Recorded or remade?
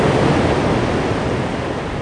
recorded